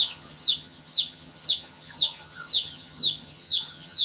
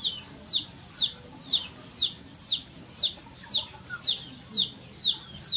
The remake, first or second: first